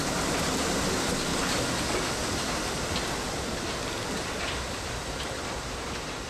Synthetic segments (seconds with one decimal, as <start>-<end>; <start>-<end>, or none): none